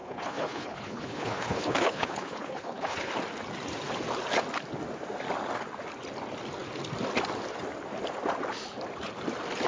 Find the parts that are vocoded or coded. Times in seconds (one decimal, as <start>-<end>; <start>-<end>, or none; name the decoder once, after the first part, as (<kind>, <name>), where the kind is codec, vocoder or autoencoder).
0.0-3.1 (codec, HILCodec)